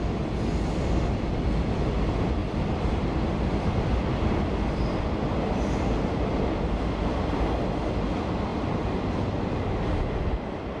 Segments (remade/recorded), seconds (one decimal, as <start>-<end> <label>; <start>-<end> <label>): 0.0-10.8 recorded